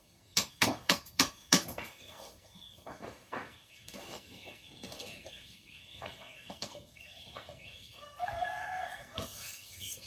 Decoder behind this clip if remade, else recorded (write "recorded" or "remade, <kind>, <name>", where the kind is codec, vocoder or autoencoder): remade, codec, SNAC